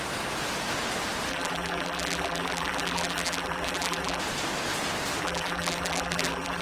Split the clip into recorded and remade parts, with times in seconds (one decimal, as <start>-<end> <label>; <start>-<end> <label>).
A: 0.0-1.3 recorded; 1.3-4.2 remade; 4.2-5.2 recorded; 5.2-6.6 remade

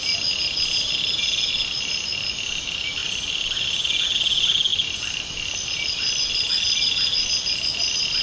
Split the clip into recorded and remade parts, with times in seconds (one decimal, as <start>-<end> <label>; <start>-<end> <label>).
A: 0.0-8.2 recorded

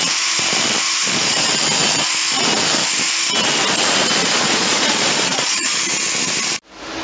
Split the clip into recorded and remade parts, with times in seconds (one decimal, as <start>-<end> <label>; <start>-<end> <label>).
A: 0.0-1.0 recorded; 1.0-1.5 remade; 1.5-4.2 recorded; 4.2-5.8 remade; 5.8-7.0 recorded